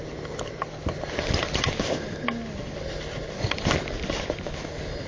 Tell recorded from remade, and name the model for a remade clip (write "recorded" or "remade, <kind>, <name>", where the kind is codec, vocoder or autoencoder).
recorded